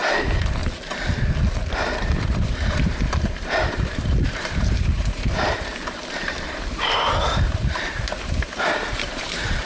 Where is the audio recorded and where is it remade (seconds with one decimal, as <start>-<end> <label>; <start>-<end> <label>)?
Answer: 0.0-0.6 remade; 0.6-2.0 recorded; 2.0-5.7 remade; 5.7-6.2 recorded; 6.2-9.7 remade